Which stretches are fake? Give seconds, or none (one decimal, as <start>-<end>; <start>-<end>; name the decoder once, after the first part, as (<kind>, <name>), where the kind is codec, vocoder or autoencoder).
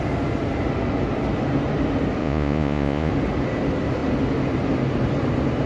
2.2-3.1 (vocoder, Vocos)